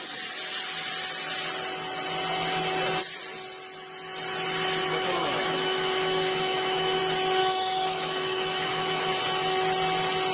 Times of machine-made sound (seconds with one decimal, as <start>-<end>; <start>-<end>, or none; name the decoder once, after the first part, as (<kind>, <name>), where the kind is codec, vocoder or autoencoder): 4.9-7.0 (autoencoder, DAC-VAE); 7.4-9.1